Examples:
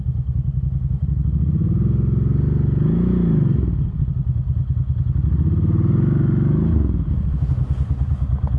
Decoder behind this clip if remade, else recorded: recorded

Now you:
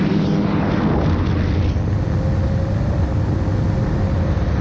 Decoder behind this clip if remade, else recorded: recorded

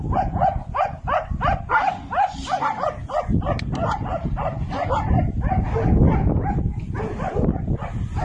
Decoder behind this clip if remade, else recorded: recorded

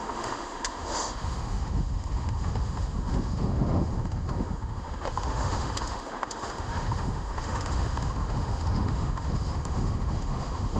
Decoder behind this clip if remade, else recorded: remade, autoencoder, DAC-VAE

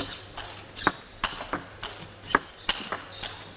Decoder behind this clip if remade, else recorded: recorded